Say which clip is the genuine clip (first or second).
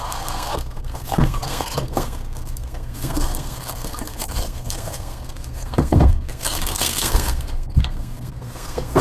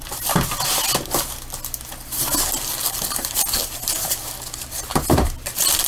second